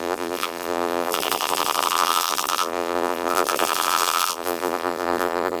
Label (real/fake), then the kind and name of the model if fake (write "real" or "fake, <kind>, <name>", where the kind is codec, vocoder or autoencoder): fake, vocoder, BigVGAN v2